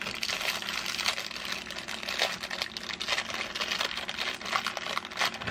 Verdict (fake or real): real